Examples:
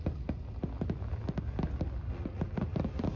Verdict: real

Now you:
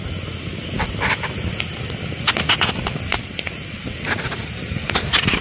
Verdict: real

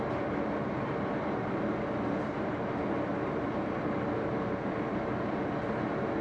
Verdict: real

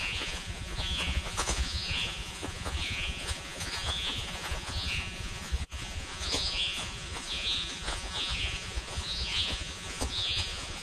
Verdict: fake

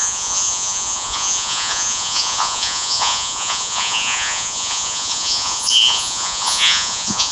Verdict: fake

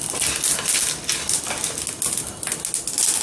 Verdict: real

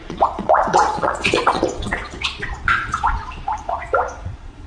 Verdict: fake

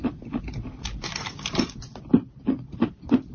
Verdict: real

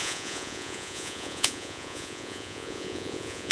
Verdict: fake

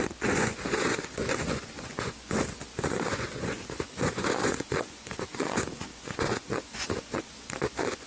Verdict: fake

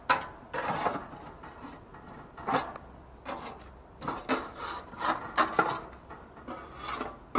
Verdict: real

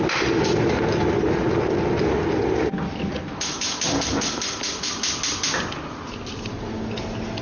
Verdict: real